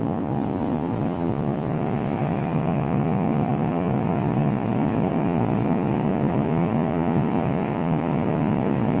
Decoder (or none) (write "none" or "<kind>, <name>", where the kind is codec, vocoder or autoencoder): vocoder, Vocos